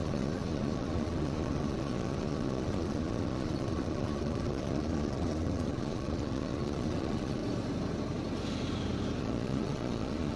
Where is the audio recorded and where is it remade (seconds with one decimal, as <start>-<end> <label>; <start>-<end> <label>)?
0.0-7.4 remade; 7.4-9.2 recorded; 9.2-10.4 remade